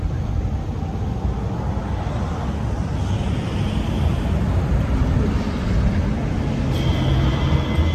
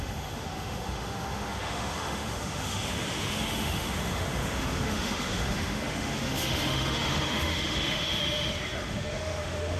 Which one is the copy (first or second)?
second